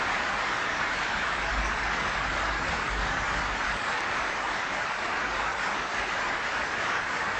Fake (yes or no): yes